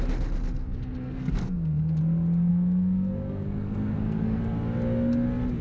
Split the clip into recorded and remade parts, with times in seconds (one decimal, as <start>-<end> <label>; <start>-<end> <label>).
0.0-0.6 recorded; 0.6-2.0 remade; 2.0-2.5 recorded; 2.5-4.4 remade; 4.4-5.6 recorded